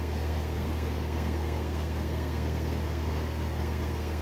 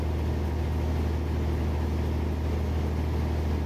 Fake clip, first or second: first